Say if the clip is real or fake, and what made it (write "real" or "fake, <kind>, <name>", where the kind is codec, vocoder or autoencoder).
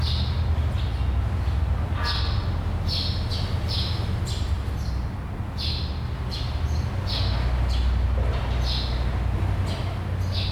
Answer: real